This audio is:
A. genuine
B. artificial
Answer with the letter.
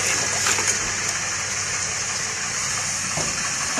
A